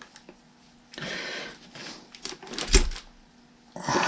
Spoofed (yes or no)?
no